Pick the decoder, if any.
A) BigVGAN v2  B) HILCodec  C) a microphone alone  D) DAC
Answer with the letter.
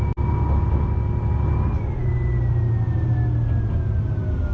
C